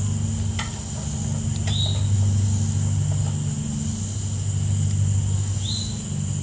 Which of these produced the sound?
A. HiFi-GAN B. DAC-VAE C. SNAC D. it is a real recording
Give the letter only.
D